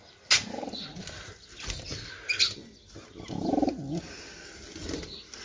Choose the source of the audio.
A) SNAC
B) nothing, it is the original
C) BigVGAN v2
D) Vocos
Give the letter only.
B